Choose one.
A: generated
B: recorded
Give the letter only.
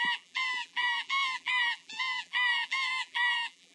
A